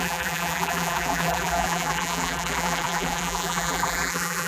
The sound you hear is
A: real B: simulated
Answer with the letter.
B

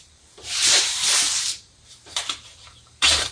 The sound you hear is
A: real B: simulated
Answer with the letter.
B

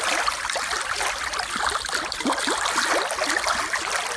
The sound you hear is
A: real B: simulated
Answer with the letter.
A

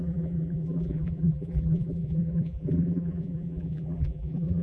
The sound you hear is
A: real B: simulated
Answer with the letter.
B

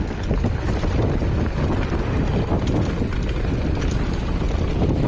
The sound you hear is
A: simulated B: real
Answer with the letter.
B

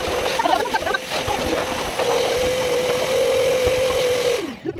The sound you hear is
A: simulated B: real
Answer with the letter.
B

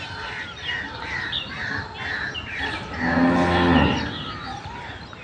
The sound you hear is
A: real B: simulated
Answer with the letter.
A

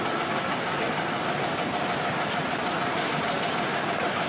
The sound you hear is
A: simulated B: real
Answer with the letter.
B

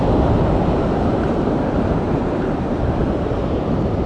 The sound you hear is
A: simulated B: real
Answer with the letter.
A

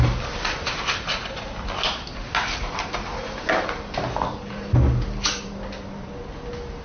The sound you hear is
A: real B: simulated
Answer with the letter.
A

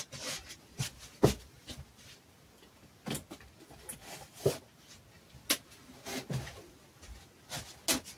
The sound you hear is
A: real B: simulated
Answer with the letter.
A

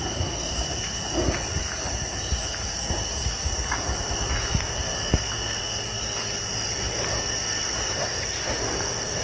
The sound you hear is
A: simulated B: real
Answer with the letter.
B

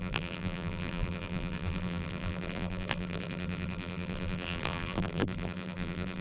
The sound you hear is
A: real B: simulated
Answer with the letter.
B